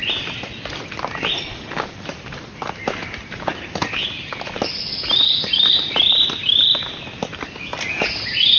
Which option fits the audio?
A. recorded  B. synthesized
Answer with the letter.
A